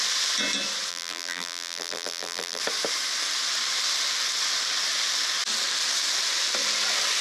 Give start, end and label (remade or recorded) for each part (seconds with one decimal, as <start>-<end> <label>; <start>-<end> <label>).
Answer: 0.0-0.9 recorded; 0.9-2.6 remade; 2.6-7.2 recorded